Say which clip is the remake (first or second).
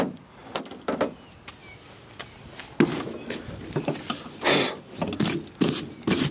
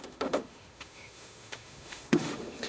second